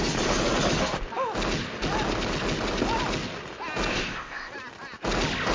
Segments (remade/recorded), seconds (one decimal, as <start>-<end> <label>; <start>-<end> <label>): 0.0-3.9 recorded; 3.9-4.5 remade; 4.5-5.5 recorded